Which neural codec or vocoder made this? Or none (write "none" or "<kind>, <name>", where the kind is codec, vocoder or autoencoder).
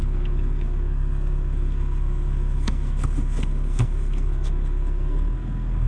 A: codec, SNAC